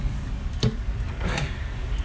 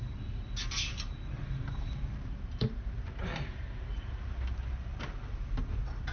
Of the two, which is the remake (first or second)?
first